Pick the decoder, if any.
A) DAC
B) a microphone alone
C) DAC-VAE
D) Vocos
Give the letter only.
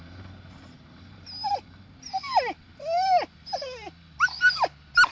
B